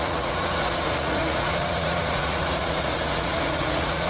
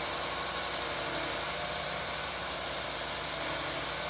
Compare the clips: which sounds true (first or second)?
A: second